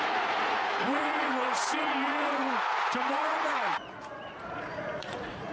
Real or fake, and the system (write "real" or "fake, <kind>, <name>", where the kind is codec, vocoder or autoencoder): fake, vocoder, Vocos